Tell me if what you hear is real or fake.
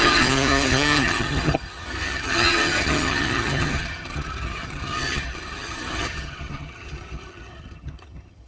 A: fake